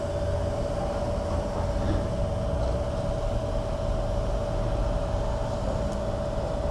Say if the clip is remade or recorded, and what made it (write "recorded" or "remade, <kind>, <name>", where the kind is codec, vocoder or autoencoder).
recorded